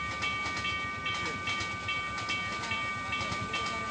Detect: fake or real real